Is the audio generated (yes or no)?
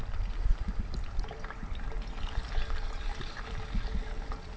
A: yes